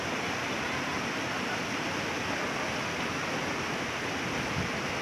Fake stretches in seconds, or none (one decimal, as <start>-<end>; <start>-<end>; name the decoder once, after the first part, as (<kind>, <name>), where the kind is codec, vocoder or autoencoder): none